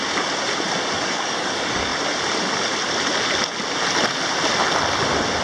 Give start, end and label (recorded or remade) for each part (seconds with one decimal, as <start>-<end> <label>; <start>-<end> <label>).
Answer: 0.0-1.0 recorded; 1.0-1.9 remade; 1.9-5.4 recorded